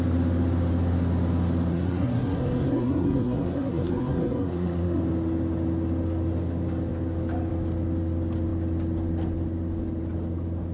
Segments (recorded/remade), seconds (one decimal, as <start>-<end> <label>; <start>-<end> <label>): 0.0-1.7 recorded; 1.7-5.0 remade; 5.0-10.7 recorded